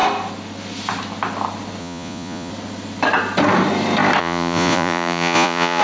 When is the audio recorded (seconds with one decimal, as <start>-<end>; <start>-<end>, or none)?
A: 0.0-1.8; 2.5-4.2